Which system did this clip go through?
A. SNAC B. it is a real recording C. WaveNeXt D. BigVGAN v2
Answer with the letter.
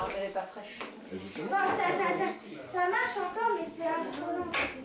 B